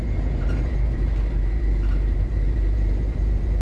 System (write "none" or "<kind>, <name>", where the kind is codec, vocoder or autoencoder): vocoder, BigVGAN v2